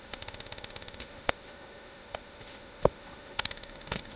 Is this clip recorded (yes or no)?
no